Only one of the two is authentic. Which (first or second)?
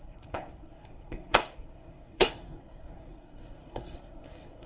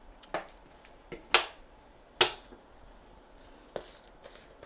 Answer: second